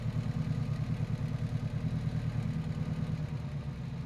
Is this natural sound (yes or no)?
yes